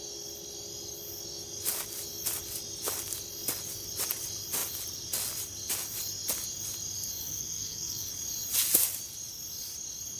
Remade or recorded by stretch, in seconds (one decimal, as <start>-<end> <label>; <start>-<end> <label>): 0.0-7.2 recorded; 7.2-8.1 remade; 8.1-10.2 recorded